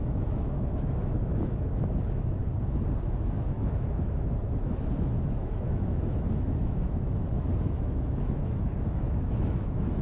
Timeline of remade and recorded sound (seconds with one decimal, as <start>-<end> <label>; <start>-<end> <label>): 0.0-2.4 remade; 2.4-3.0 recorded; 3.0-10.0 remade